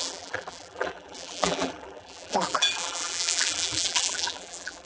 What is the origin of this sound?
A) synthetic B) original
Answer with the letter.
A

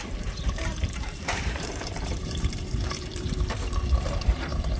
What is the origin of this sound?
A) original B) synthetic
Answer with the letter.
B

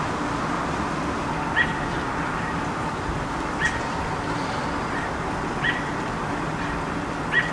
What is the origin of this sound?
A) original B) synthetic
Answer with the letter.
A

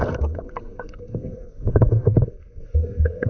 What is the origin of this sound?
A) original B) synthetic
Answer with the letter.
B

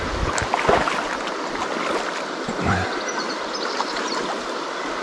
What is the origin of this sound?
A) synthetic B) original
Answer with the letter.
B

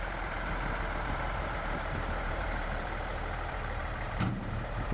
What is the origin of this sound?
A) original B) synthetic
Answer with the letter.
B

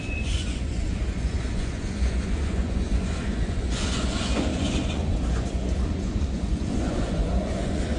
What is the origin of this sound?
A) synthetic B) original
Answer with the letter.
A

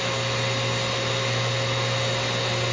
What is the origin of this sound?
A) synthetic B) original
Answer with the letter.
B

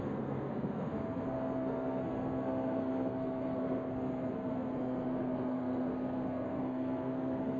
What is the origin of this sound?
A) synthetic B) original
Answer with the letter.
A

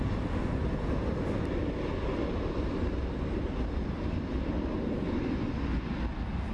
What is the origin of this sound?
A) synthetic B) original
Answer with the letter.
B